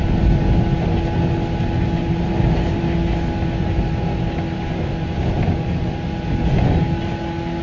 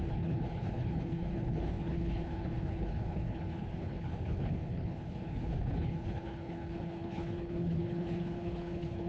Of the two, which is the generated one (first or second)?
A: second